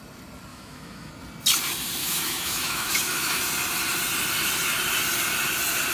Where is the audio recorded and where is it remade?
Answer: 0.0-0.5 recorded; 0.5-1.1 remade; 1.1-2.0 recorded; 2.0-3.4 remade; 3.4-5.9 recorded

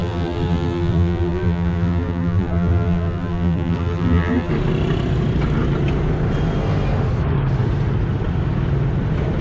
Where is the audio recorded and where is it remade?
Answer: 0.0-4.5 remade; 4.5-9.4 recorded

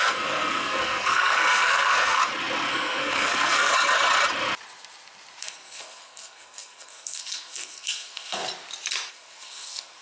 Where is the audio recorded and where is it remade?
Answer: 0.0-2.2 remade; 2.2-2.7 recorded; 2.7-3.7 remade; 3.7-5.4 recorded; 5.4-8.4 remade; 8.4-9.1 recorded; 9.1-10.0 remade

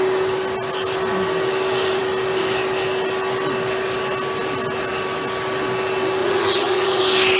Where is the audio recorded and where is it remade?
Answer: 0.0-6.2 recorded; 6.2-7.0 remade; 7.0-7.4 recorded

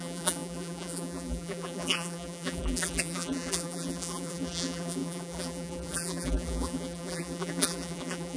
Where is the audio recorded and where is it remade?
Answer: 0.0-8.4 remade

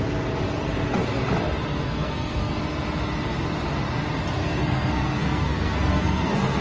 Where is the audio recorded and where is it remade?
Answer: 0.0-1.7 recorded; 1.7-2.5 remade; 2.5-4.4 recorded; 4.4-6.6 remade

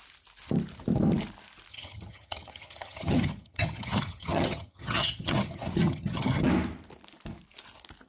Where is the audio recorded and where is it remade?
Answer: 0.0-1.7 recorded; 1.7-6.5 remade; 6.5-8.1 recorded

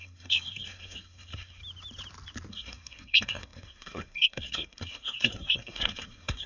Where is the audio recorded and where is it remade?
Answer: 0.0-1.6 remade; 1.6-2.5 recorded; 2.5-6.5 remade